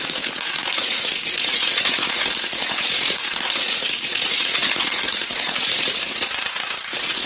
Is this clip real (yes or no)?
no